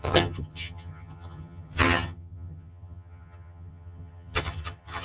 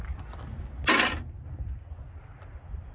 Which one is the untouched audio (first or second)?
second